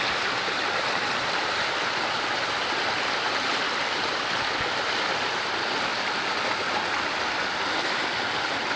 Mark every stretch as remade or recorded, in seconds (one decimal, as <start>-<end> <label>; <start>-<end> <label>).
0.0-8.8 recorded